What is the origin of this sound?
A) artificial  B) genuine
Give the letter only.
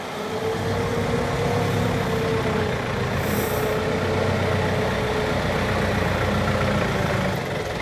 B